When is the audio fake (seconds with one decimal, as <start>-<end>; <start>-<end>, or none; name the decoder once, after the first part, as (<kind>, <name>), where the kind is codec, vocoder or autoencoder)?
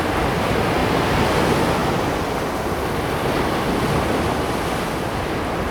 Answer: 0.8-1.3 (vocoder, BigVGAN v2)